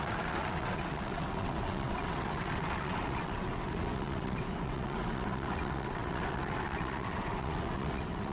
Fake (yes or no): yes